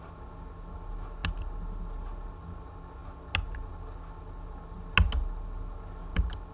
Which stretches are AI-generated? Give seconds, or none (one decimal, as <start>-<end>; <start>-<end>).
none